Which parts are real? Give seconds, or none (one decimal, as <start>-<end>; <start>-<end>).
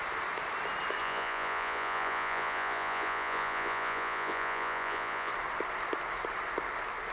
0.0-1.0; 5.3-7.1